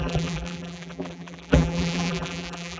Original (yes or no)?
no